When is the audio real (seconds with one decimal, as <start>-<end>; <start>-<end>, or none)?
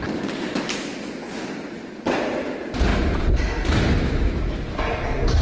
0.0-2.9; 3.4-5.4